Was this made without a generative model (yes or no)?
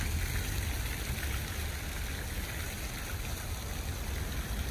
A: yes